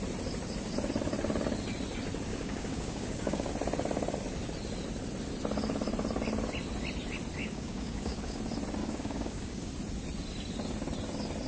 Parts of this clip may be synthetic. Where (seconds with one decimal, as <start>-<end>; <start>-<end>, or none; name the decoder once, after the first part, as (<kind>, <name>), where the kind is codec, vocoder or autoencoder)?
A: 2.3-3.5 (codec, DAC); 7.4-8.4; 8.8-9.7